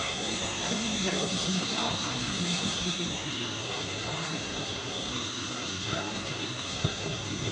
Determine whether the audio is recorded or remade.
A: remade